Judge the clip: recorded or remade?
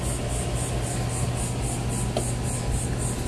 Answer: recorded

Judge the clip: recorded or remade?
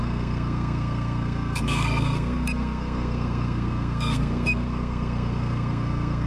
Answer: remade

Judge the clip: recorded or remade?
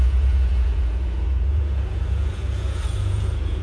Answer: remade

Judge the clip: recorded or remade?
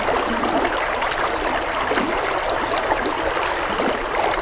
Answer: recorded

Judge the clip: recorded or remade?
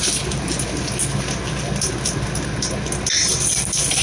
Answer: recorded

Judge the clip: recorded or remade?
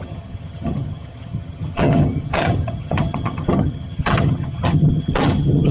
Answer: remade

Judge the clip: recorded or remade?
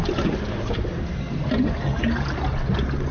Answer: recorded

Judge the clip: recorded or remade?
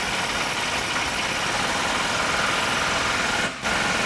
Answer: recorded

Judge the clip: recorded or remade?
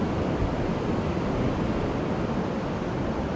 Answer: recorded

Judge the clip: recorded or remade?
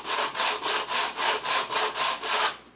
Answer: recorded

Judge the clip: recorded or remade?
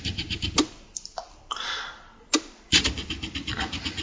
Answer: remade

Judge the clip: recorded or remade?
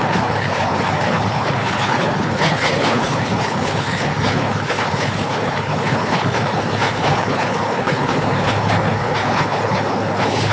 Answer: remade